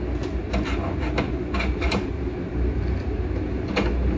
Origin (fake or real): real